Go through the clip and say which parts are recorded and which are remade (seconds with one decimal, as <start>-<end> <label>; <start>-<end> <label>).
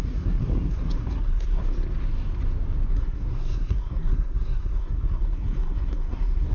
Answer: 0.0-1.6 remade; 1.6-2.9 recorded; 2.9-6.5 remade